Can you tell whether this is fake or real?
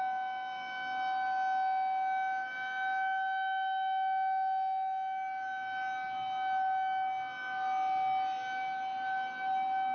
real